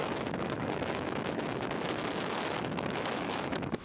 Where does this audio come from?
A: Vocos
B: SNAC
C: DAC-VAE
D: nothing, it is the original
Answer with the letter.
C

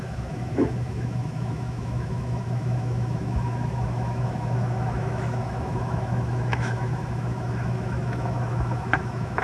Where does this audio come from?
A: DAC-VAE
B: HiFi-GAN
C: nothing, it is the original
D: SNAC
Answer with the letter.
A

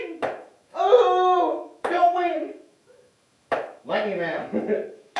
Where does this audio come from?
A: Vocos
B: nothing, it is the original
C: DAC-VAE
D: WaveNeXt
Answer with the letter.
C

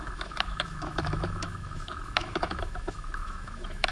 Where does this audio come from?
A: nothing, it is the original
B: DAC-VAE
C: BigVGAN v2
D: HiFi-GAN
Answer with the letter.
B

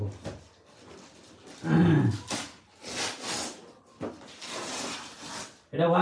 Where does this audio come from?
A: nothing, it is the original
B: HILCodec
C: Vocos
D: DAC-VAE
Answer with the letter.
A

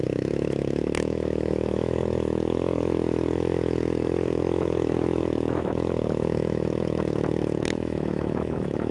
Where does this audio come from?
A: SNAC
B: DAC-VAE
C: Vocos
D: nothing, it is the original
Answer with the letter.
B